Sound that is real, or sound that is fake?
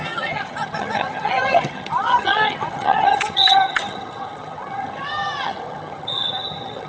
fake